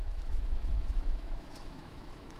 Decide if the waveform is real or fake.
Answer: fake